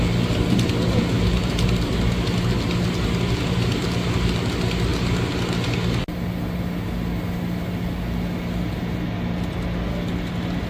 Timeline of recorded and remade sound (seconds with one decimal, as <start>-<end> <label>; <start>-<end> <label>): 0.0-10.7 recorded